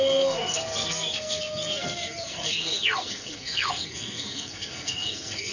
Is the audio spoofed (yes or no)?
yes